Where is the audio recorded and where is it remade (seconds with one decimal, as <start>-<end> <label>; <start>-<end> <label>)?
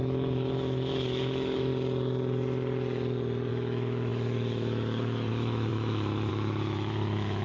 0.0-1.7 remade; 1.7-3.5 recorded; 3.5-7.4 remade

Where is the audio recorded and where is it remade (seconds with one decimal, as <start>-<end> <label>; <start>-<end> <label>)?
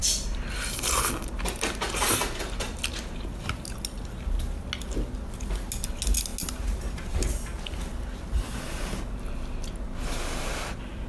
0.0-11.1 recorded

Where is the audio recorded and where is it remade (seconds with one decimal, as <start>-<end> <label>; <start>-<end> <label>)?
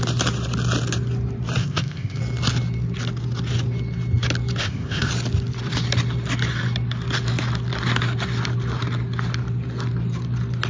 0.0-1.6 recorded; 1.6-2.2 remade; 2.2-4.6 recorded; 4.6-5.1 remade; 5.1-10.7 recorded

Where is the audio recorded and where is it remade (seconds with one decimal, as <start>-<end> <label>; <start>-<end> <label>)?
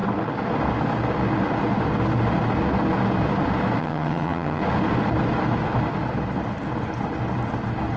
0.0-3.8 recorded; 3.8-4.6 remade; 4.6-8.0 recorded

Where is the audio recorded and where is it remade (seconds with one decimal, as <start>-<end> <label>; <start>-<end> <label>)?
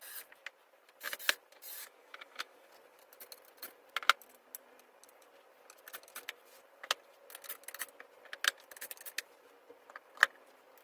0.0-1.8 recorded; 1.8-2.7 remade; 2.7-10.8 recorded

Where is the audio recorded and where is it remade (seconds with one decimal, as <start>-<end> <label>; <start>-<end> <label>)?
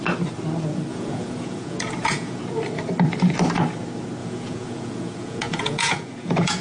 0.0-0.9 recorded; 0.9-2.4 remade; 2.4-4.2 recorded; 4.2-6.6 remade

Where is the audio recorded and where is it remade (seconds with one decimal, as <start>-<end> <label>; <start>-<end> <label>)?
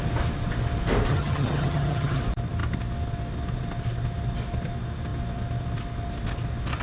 0.0-1.1 recorded; 1.1-2.2 remade; 2.2-6.8 recorded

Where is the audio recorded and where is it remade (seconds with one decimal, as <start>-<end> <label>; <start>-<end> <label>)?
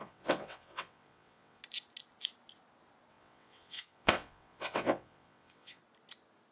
0.0-1.6 remade; 1.6-3.1 recorded; 3.1-5.8 remade; 5.8-6.5 recorded